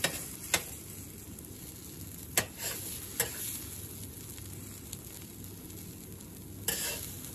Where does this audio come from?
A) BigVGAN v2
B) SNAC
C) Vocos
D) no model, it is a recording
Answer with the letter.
D